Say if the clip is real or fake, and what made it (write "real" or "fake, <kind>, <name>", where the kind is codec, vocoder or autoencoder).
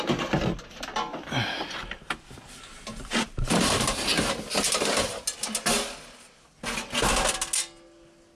real